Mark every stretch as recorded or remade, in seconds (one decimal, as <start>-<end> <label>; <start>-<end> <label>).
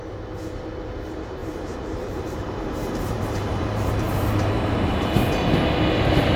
0.0-1.4 recorded; 1.4-5.2 remade; 5.2-6.4 recorded